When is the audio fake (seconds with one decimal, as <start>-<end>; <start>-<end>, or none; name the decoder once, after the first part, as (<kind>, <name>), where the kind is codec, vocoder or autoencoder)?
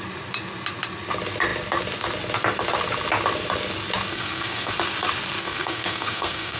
4.1-4.7 (codec, SNAC); 5.4-6.6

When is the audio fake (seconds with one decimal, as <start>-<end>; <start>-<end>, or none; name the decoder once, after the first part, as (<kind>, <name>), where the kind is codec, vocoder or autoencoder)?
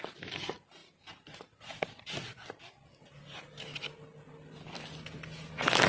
none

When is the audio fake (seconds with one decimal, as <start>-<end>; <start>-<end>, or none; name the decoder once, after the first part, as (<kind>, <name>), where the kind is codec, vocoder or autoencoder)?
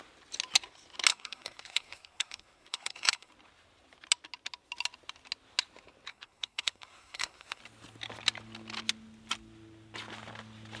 1.1-3.3 (codec, SNAC); 6.1-7.6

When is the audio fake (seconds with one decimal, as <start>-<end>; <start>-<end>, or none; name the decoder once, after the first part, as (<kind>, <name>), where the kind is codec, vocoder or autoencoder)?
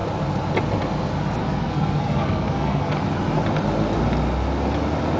1.4-2.9 (codec, SNAC)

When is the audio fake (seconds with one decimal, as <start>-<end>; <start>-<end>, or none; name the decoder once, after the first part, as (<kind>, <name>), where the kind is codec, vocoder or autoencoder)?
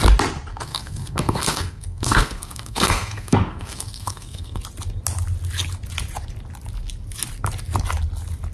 0.5-4.6 (codec, SNAC)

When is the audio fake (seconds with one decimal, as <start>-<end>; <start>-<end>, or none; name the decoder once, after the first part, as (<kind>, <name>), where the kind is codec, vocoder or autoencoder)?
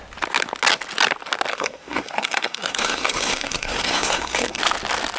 1.5-4.6 (codec, SNAC)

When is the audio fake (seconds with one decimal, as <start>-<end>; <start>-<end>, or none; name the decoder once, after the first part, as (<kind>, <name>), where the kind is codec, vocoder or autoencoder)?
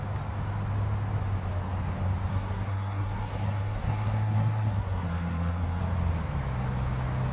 2.3-5.8 (codec, SNAC)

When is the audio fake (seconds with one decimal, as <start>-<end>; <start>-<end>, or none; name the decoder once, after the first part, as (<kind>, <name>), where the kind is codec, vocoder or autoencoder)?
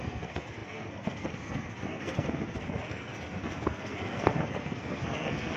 0.0-5.6 (codec, SNAC)